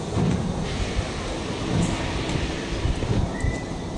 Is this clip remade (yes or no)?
no